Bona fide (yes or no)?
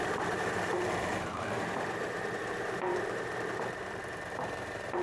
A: no